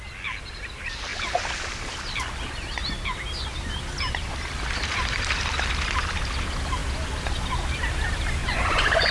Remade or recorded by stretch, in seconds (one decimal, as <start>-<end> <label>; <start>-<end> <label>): 0.0-8.4 recorded; 8.4-9.1 remade